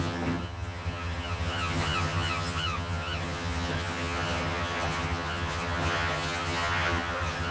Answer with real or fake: fake